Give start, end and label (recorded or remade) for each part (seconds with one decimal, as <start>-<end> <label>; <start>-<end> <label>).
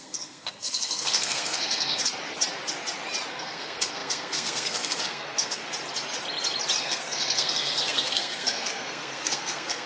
0.0-2.0 remade; 2.0-3.3 recorded; 3.3-5.6 remade; 5.6-6.8 recorded; 6.8-9.9 remade